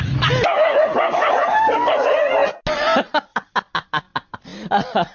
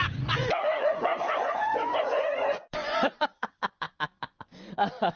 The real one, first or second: first